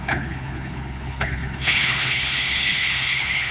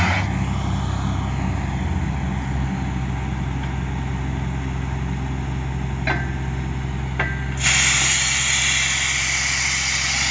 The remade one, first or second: first